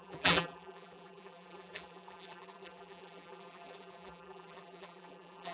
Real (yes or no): no